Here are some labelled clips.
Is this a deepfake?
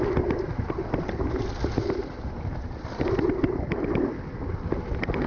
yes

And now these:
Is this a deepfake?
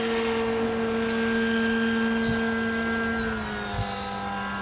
no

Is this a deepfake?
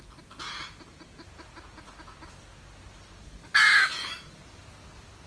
no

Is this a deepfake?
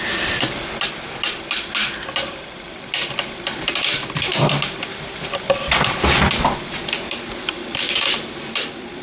yes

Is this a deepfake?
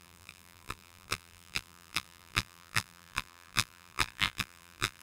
yes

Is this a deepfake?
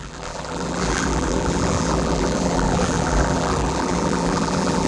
yes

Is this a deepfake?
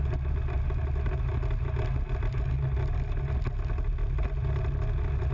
no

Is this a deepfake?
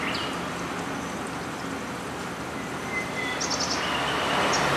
no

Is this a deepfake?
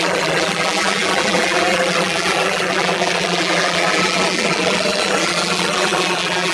yes